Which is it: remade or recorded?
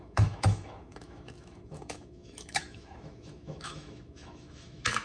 remade